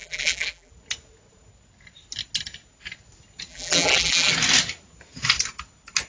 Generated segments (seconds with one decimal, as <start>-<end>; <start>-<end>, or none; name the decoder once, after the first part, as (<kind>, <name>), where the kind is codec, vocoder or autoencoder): 0.0-0.7 (vocoder, BigVGAN v2); 3.5-4.3